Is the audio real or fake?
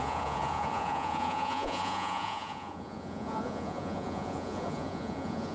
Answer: fake